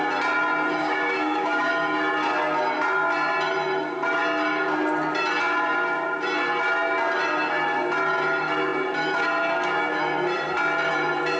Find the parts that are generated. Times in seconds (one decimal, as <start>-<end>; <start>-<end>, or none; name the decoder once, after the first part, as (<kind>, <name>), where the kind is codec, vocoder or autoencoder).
0.8-1.7 (codec, DAC)